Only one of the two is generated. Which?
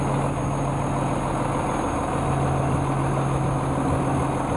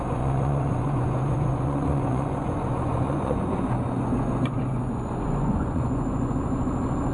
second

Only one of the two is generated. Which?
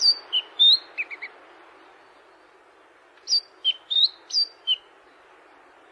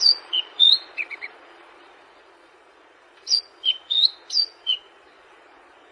second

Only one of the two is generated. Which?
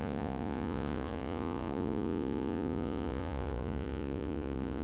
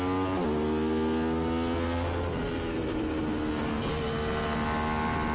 first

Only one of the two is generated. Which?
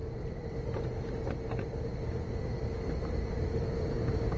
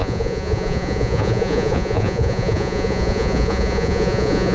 second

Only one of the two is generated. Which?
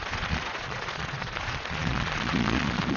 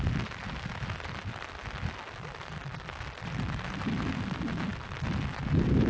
first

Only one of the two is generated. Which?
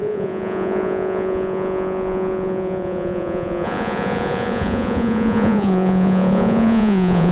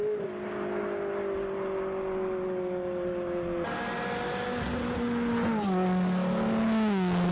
first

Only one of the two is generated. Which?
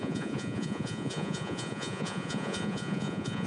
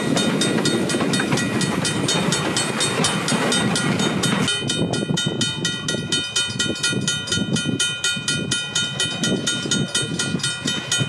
first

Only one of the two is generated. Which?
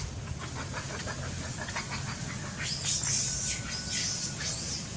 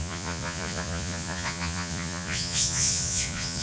second